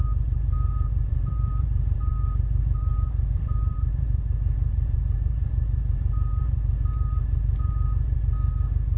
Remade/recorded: remade